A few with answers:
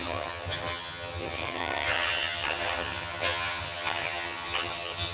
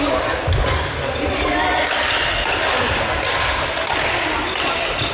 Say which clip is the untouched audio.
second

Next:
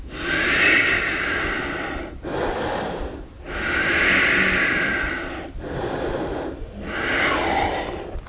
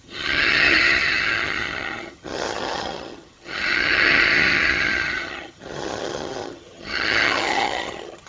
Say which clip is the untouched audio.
first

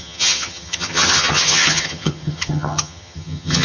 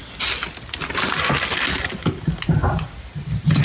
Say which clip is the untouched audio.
second